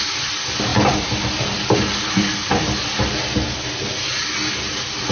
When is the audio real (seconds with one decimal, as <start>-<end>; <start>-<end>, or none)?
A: 0.0-5.1